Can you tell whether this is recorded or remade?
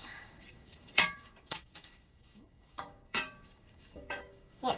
remade